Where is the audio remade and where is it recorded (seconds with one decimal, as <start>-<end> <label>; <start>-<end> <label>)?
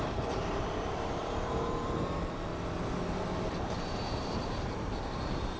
0.0-2.5 remade; 2.5-3.2 recorded; 3.2-5.6 remade